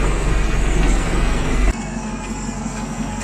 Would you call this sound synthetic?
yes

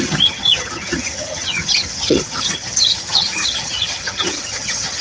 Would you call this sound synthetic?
yes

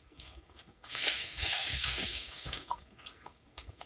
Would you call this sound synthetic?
yes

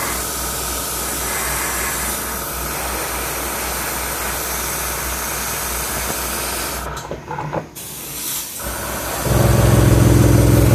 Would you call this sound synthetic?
no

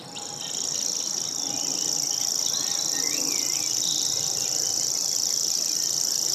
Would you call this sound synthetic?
no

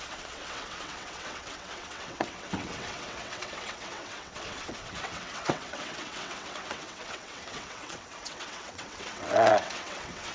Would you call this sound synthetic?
yes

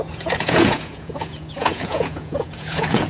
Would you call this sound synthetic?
yes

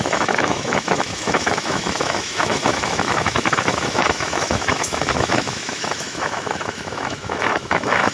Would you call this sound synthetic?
yes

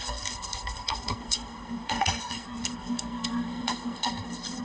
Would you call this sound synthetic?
yes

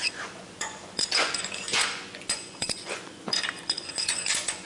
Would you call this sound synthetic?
yes